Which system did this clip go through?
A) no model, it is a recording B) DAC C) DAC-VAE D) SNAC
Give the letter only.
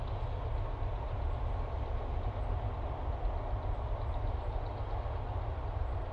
A